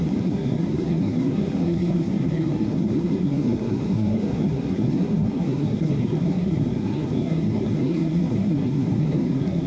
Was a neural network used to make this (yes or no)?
yes